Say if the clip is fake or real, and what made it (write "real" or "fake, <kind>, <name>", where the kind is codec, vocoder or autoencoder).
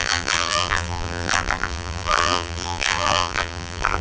fake, vocoder, BigVGAN v2